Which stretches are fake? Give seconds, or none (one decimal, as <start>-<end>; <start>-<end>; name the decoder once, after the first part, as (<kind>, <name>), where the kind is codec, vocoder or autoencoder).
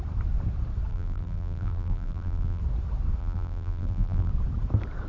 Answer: 0.9-2.6 (vocoder, BigVGAN v2); 3.2-4.3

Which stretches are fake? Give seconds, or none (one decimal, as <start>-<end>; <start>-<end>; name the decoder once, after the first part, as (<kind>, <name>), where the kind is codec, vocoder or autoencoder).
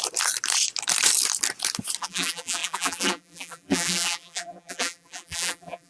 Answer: 2.0-5.9 (vocoder, BigVGAN v2)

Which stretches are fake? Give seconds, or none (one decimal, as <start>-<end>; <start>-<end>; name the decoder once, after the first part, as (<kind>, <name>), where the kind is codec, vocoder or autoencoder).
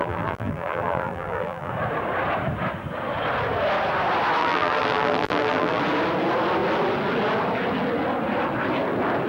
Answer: 0.0-1.7 (vocoder, BigVGAN v2); 4.4-5.8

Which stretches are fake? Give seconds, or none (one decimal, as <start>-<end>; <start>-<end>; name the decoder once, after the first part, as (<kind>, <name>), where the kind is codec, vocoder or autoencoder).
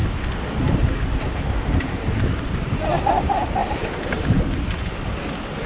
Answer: 0.0-5.7 (vocoder, BigVGAN v2)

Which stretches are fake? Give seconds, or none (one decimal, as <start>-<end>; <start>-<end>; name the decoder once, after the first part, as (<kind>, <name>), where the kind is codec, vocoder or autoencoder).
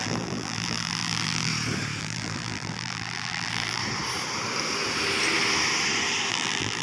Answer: 0.0-1.5 (vocoder, BigVGAN v2); 2.0-3.8; 6.3-6.8